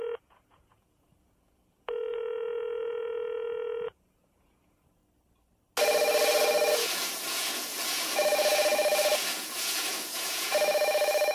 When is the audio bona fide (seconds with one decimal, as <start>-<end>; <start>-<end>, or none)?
5.0-6.7

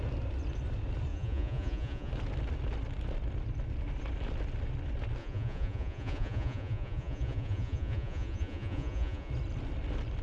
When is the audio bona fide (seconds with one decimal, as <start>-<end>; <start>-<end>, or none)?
0.0-1.1; 2.1-5.2; 9.3-10.2

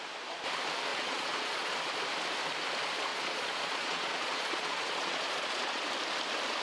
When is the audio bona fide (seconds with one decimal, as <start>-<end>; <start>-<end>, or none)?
0.0-0.9; 1.7-3.1; 5.8-6.6